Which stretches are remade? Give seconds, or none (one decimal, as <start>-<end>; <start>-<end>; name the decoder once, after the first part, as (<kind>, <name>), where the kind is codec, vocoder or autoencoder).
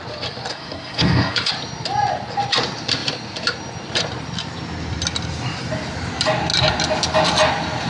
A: 0.5-1.5 (codec, SNAC)